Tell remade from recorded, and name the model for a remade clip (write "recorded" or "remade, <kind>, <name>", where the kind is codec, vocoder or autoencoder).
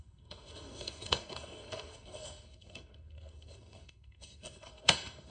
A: remade, codec, SNAC